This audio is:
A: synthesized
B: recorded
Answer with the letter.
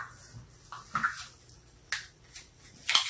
B